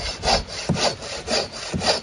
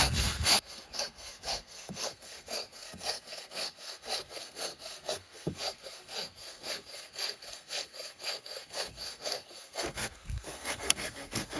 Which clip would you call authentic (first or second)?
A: first